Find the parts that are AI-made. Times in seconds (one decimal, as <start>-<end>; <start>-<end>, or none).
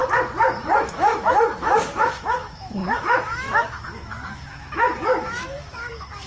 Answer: 0.8-6.3